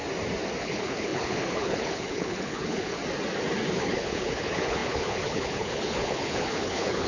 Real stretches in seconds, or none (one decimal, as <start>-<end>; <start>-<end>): 0.0-0.6; 3.0-3.7